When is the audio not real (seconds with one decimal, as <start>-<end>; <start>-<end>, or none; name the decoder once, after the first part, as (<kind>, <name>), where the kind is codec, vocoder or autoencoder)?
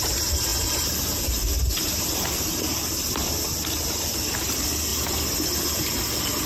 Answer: none